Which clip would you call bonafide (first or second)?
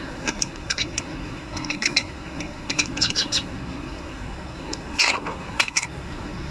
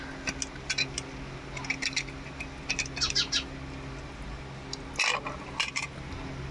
second